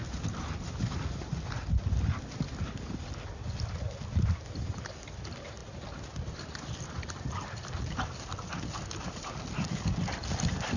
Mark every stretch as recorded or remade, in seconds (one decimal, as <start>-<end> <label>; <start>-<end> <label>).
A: 0.0-10.8 recorded